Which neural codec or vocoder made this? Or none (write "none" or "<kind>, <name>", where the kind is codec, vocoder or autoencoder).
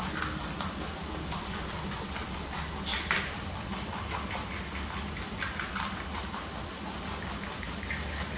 none